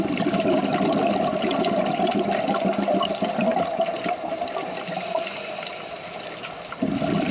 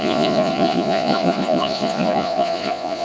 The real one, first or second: first